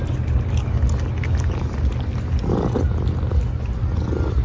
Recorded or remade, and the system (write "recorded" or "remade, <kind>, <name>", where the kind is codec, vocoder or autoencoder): recorded